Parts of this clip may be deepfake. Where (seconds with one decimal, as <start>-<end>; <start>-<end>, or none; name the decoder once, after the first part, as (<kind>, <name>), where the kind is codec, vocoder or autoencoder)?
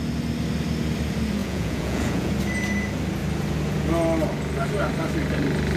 1.4-2.3 (vocoder, Vocos)